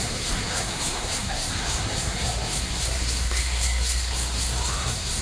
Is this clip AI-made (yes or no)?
yes